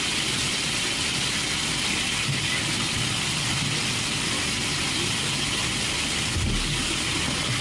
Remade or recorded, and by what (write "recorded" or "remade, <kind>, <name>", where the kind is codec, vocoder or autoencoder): recorded